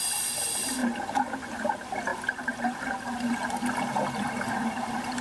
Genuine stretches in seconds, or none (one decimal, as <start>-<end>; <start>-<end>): none